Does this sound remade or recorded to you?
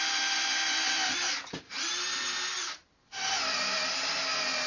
recorded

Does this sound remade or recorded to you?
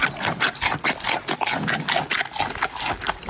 recorded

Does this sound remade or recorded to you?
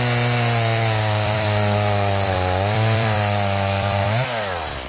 remade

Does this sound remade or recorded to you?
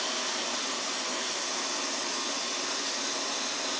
recorded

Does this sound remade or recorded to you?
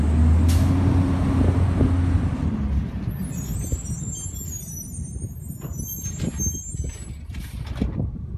recorded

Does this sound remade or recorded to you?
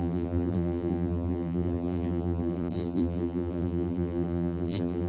remade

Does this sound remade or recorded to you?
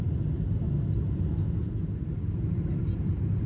recorded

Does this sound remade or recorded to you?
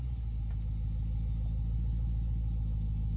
recorded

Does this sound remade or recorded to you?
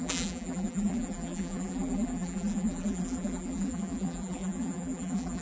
remade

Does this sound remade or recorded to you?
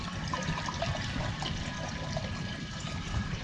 remade